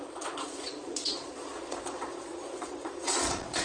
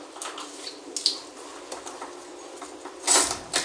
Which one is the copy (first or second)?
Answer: first